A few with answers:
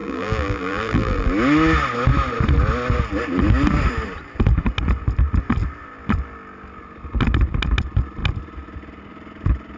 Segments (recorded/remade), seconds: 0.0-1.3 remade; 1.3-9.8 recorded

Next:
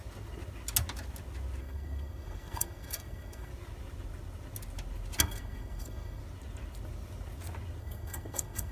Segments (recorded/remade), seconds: 0.0-1.6 recorded; 1.6-3.5 remade; 3.5-5.2 recorded; 5.2-6.2 remade; 6.2-7.8 recorded; 7.8-8.7 remade

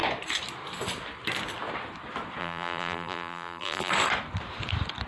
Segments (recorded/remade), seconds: 0.0-2.4 recorded; 2.4-3.9 remade; 3.9-5.1 recorded

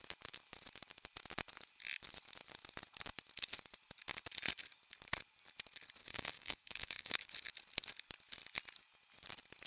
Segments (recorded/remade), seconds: 0.0-6.0 recorded; 6.0-7.3 remade; 7.3-9.7 recorded